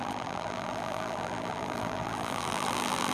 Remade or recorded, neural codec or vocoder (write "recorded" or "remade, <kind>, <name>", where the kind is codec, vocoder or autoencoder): remade, vocoder, BigVGAN v2